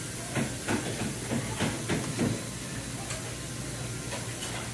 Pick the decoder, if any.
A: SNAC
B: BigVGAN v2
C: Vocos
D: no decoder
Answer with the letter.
D